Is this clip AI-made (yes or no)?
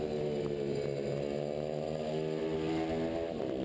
no